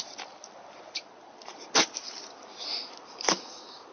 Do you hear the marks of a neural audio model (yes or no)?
no